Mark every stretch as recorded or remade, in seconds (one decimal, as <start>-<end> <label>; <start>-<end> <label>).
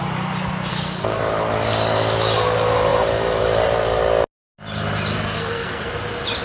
0.0-0.7 recorded; 0.7-1.2 remade; 1.2-5.1 recorded; 5.1-5.9 remade; 5.9-6.4 recorded